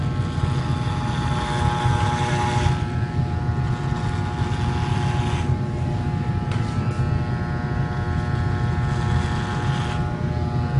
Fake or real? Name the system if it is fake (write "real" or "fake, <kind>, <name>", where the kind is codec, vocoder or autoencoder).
real